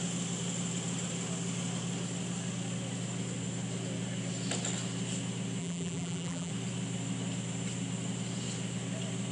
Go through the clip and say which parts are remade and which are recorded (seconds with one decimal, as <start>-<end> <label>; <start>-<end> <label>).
0.0-5.6 recorded; 5.6-6.5 remade; 6.5-9.3 recorded

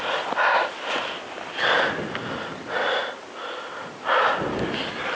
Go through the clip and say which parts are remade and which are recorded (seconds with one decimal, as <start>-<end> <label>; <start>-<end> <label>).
0.0-5.1 recorded

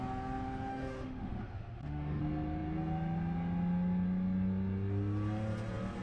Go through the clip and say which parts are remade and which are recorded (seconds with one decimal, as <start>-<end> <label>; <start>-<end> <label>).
0.0-0.7 recorded; 0.7-2.2 remade; 2.2-6.0 recorded

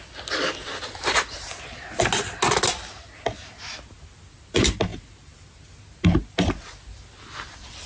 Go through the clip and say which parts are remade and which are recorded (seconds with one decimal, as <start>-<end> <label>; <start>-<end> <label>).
0.0-7.9 recorded

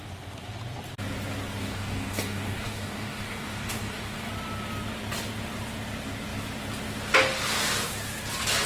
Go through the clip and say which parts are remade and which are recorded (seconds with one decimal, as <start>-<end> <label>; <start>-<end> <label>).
0.0-1.6 recorded; 1.6-4.3 remade; 4.3-8.7 recorded

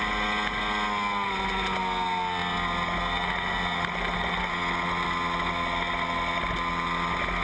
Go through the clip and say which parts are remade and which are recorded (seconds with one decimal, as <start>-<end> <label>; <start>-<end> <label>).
0.0-7.4 recorded

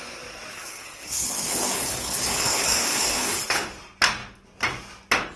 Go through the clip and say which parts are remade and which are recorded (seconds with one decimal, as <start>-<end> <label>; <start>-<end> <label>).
0.0-0.5 recorded; 0.5-3.7 remade; 3.7-5.4 recorded